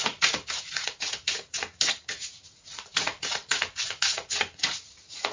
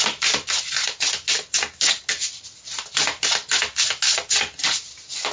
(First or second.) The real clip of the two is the second